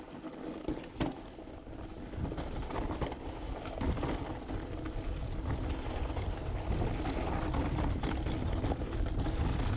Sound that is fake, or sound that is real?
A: real